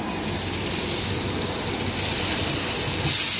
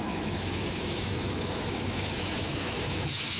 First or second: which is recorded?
first